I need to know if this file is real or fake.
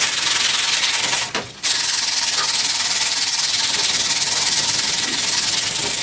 real